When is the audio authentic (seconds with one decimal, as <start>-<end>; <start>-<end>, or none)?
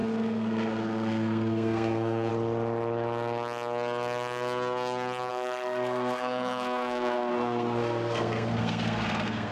2.3-5.3